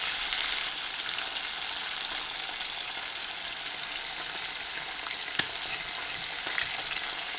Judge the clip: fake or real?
real